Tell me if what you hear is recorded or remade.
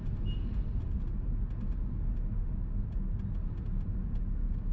recorded